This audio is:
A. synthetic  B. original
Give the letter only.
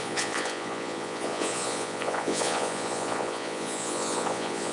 A